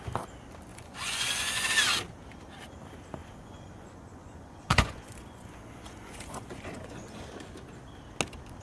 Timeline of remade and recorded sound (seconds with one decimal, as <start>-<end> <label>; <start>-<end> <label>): 0.0-0.7 recorded; 0.7-1.7 remade; 1.7-3.2 recorded; 3.2-7.2 remade; 7.2-8.6 recorded